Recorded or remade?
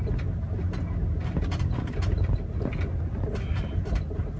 recorded